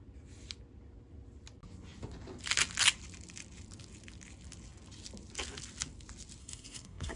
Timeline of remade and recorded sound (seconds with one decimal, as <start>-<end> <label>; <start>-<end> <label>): 0.0-6.4 recorded; 6.4-7.2 remade